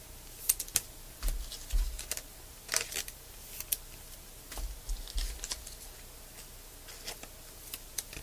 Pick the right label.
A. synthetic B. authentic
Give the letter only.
B